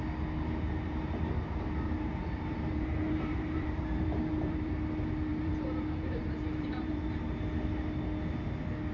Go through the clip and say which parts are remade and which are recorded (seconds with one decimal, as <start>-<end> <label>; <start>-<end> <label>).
0.0-0.9 recorded; 0.9-4.7 remade; 4.7-5.3 recorded; 5.3-7.2 remade; 7.2-8.9 recorded